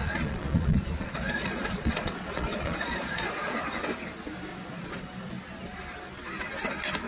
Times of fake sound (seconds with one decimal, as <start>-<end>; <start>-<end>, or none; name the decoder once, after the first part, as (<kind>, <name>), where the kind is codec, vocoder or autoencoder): 0.0-3.3 (vocoder, Vocos); 4.5-5.3